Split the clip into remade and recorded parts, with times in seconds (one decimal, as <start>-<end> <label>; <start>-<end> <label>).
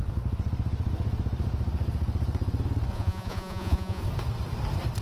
0.0-2.9 recorded; 2.9-4.0 remade; 4.0-5.0 recorded